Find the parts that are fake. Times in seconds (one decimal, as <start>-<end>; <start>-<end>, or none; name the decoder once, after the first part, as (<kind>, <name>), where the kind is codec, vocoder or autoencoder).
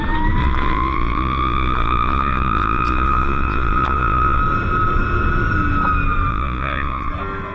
0.4-4.4 (vocoder, Vocos); 6.3-7.1